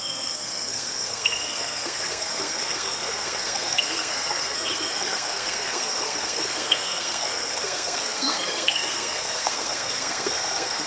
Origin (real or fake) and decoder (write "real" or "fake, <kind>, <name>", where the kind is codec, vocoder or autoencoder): fake, codec, SNAC